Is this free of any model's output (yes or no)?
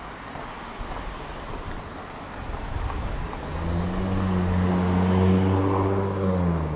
yes